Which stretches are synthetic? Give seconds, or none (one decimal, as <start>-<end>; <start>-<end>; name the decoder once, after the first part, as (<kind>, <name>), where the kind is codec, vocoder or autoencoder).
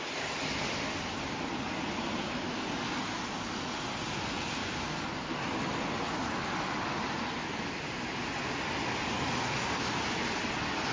none